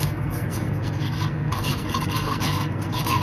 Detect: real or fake fake